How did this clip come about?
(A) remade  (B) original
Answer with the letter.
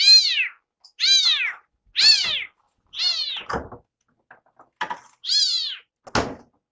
B